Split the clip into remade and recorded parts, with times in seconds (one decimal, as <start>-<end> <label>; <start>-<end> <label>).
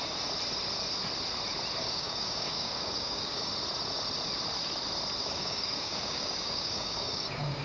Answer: 0.0-1.8 recorded; 1.8-3.5 remade; 3.5-5.2 recorded; 5.2-7.6 remade